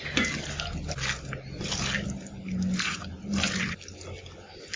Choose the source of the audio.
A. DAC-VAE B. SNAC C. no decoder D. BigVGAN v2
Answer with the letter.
C